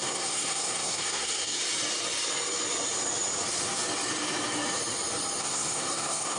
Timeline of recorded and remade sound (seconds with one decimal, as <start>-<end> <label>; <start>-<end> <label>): 0.0-1.6 remade; 1.6-5.4 recorded; 5.4-6.4 remade